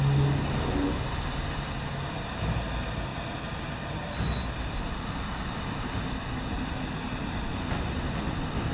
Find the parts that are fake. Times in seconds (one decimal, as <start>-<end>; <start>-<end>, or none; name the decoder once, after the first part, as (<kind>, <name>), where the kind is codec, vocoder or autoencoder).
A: none